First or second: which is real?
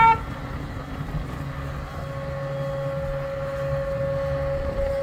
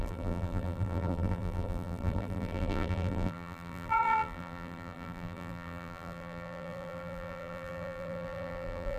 first